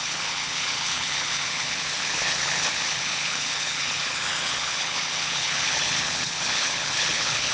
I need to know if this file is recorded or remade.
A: remade